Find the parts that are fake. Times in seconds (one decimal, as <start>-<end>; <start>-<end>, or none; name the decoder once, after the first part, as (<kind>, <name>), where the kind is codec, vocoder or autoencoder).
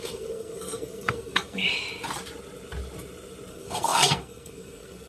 0.0-1.6 (codec, SNAC); 3.5-5.1